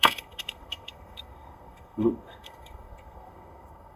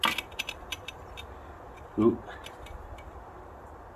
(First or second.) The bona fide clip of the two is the second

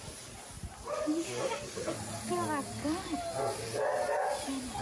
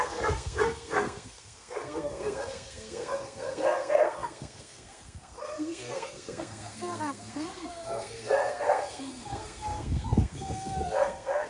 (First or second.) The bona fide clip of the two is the first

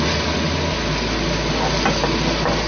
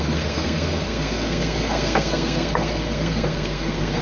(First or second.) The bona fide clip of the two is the first